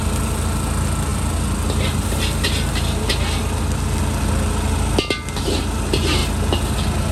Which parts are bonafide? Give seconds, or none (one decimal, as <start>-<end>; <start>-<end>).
0.0-7.1